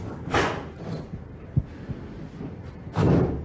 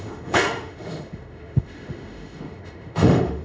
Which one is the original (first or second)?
first